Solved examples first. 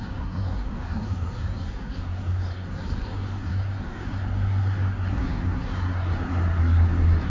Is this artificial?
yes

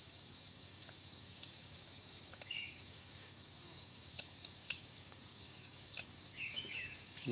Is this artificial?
yes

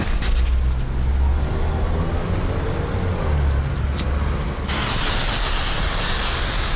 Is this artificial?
no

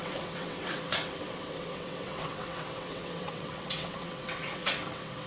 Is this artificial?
yes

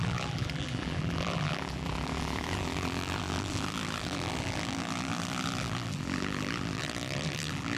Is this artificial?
yes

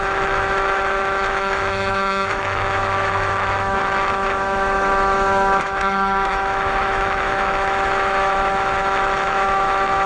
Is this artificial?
yes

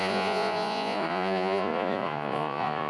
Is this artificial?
yes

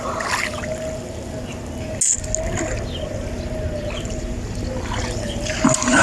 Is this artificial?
no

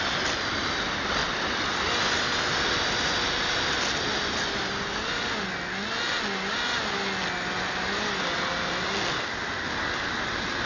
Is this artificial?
no